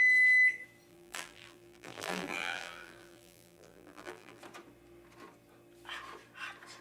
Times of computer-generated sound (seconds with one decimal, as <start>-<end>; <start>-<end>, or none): 0.9-4.4